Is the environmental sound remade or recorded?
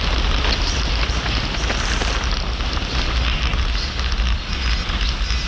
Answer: recorded